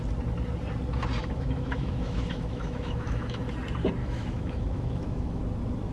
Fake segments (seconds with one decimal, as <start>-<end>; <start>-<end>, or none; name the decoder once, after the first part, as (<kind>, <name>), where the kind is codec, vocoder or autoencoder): 1.2-3.4 (autoencoder, DAC-VAE); 4.0-5.4